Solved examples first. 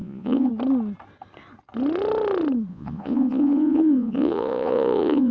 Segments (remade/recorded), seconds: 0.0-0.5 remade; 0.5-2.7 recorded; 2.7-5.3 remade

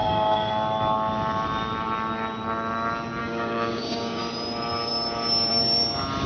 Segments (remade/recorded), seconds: 0.0-0.5 remade; 0.5-3.2 recorded; 3.2-4.2 remade; 4.2-6.3 recorded

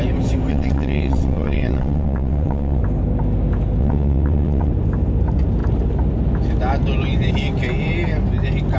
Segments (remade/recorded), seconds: 0.0-0.5 recorded; 0.5-2.8 remade; 2.8-3.8 recorded; 3.8-4.7 remade; 4.7-8.8 recorded

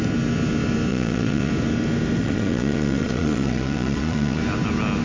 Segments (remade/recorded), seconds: 0.0-0.9 recorded; 0.9-1.5 remade; 1.5-2.2 recorded; 2.2-4.4 remade; 4.4-5.0 recorded

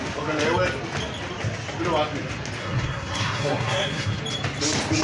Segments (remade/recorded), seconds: 0.0-2.6 recorded; 2.6-4.2 remade; 4.2-5.0 recorded

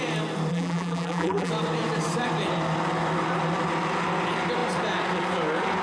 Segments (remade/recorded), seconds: 0.0-0.5 recorded; 0.5-1.5 remade; 1.5-5.8 recorded